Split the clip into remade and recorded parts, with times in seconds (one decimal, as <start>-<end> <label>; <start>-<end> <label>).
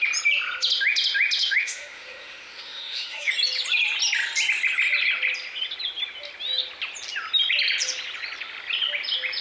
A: 0.0-1.4 recorded; 1.4-3.3 remade; 3.3-9.4 recorded